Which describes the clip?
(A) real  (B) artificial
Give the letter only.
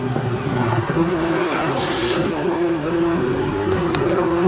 B